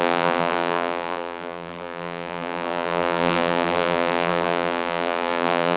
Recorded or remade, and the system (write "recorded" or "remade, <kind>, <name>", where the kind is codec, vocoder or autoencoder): remade, vocoder, BigVGAN v2